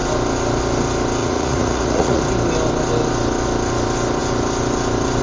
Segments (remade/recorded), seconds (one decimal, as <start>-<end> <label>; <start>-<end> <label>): 0.0-1.2 recorded; 1.2-2.2 remade; 2.2-5.2 recorded